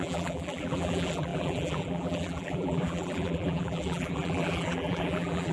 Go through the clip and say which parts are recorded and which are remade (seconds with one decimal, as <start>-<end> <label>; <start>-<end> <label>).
0.0-5.5 remade